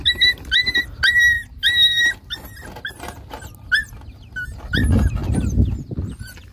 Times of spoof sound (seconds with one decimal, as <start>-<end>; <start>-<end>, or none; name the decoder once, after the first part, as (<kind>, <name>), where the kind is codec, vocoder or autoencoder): none